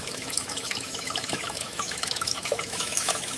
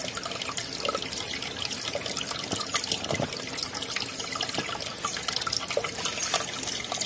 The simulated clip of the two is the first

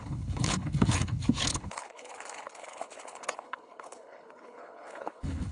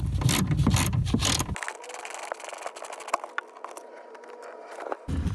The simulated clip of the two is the first